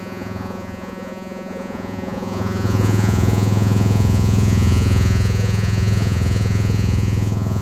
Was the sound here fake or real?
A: fake